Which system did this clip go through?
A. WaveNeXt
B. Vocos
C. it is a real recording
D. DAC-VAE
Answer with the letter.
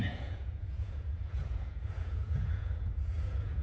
B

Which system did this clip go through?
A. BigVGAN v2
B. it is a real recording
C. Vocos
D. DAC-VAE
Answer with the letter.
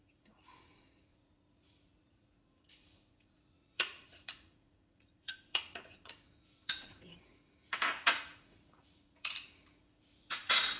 C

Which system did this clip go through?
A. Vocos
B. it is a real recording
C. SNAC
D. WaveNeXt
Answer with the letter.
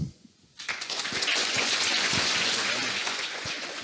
A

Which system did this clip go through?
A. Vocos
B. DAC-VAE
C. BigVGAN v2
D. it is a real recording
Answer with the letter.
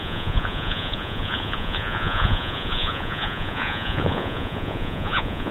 A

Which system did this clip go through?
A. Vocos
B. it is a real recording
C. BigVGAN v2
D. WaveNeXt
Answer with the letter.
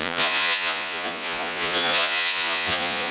A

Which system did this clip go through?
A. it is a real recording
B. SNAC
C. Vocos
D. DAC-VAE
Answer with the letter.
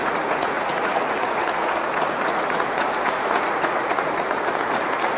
C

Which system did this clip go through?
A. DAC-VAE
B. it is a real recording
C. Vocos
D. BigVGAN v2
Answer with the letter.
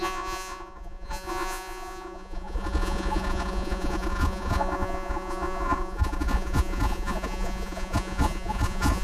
C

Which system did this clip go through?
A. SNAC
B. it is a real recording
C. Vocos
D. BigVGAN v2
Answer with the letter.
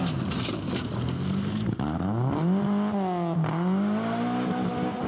B